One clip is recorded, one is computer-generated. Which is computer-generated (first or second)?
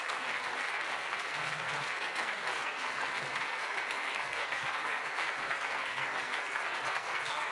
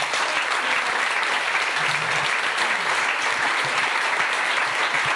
first